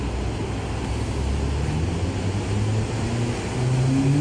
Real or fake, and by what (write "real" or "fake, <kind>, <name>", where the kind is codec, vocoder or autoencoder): real